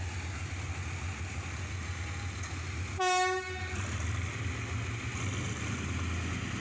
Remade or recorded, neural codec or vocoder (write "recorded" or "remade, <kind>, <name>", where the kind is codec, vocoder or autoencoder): recorded